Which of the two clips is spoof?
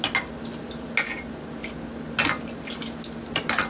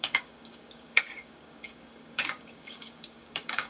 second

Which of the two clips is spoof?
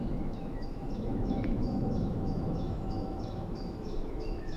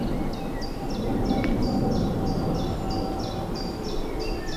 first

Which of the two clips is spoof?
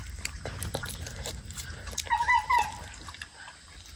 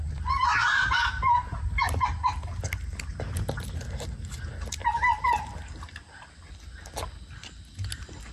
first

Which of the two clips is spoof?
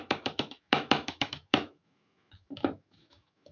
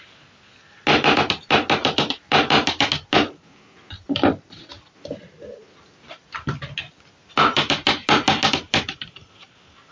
first